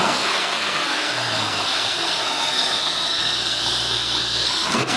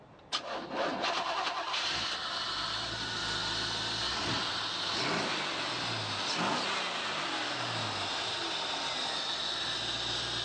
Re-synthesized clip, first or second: first